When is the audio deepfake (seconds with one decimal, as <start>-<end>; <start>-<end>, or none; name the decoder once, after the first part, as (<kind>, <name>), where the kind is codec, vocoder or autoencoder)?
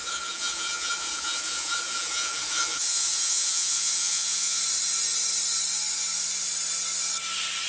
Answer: 0.0-4.6 (vocoder, Vocos)